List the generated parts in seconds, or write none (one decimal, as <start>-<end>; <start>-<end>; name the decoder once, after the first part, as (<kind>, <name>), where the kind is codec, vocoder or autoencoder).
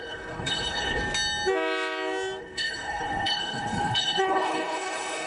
0.0-1.0 (codec, HILCodec); 2.4-5.3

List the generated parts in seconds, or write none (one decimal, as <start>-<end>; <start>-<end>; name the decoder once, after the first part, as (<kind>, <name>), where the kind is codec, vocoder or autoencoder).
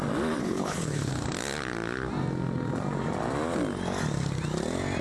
0.4-1.1 (codec, HILCodec)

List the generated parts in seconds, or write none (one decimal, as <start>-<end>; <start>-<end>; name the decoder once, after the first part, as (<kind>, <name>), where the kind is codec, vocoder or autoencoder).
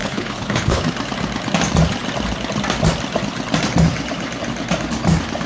0.0-0.8 (codec, HILCodec)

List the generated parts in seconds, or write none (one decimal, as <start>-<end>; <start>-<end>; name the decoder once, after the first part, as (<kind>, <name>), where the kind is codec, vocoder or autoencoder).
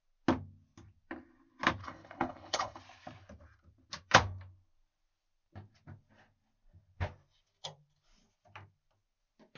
1.8-2.8 (codec, HILCodec)